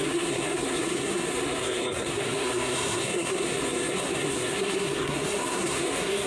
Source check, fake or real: fake